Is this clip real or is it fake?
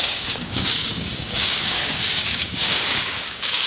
fake